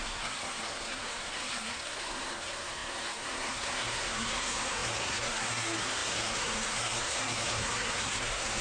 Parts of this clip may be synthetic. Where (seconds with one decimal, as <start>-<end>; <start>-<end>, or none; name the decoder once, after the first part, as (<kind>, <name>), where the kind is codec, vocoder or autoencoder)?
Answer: 0.0-8.6 (codec, SNAC)